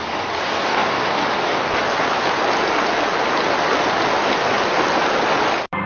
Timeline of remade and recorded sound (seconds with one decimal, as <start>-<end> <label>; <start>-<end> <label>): 0.0-0.8 remade; 0.8-4.3 recorded; 4.3-5.9 remade